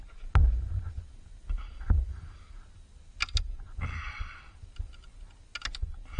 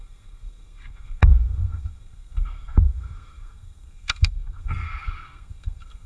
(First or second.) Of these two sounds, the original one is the first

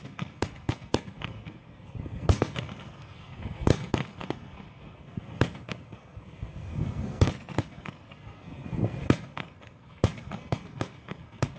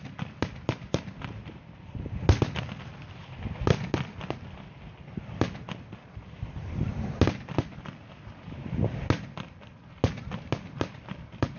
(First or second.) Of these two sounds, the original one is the second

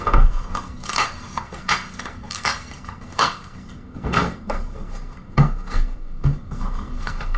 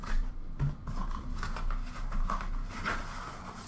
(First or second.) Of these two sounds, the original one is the second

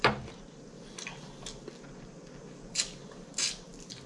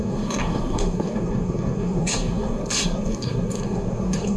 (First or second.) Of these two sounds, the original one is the first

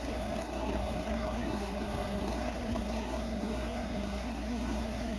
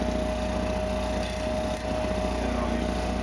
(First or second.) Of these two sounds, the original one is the second